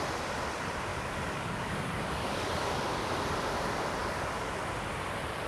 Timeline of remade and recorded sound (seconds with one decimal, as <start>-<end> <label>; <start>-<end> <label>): 0.0-0.9 recorded; 0.9-3.2 remade; 3.2-4.0 recorded; 4.0-4.5 remade; 4.5-5.5 recorded